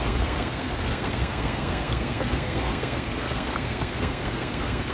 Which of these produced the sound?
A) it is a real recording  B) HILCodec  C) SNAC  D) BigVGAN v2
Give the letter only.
C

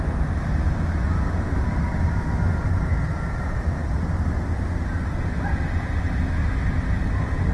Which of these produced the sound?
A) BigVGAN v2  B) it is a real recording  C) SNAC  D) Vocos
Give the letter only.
B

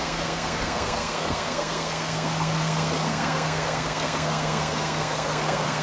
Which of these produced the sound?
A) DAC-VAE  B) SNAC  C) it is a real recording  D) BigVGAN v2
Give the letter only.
B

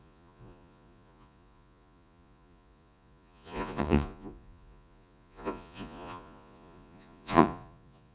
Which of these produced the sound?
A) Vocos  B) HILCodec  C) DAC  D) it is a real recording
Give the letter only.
A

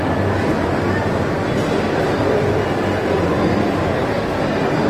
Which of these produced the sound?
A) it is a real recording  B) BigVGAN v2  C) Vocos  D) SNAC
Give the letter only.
A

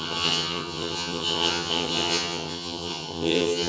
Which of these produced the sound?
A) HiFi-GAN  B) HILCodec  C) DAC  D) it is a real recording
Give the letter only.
A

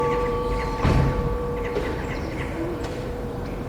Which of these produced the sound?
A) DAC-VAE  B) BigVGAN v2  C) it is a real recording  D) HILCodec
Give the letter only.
B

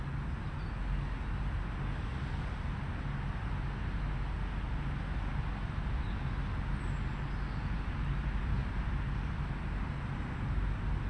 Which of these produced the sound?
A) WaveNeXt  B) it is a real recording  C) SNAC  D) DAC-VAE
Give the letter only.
B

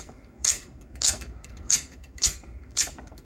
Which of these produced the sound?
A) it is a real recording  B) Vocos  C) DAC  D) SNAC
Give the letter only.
D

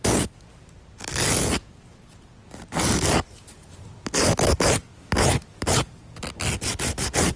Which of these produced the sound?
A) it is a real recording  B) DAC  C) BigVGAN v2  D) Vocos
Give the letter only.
A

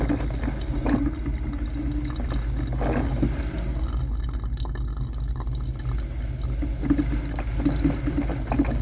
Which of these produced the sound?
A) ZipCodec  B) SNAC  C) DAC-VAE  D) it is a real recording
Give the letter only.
D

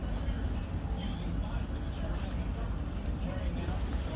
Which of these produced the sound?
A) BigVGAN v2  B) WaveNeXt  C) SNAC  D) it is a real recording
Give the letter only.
D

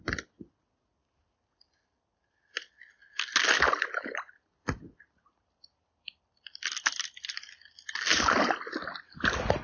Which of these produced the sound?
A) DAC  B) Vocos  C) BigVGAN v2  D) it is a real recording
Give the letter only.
D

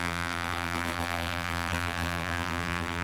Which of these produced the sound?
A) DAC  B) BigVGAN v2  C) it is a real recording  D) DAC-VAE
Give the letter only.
B